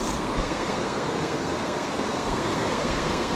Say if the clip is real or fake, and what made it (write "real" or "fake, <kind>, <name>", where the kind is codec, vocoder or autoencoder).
fake, codec, SNAC